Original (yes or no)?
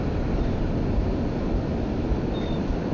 yes